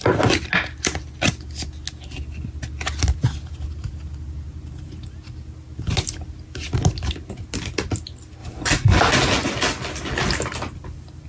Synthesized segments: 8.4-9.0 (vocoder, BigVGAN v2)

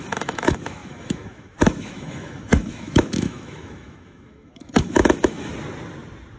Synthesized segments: 0.0-5.5 (autoencoder, DAC-VAE)

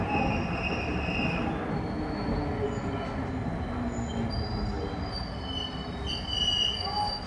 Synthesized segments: none

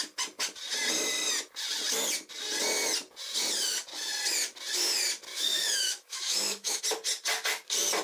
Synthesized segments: 5.3-6.8 (autoencoder, DAC-VAE)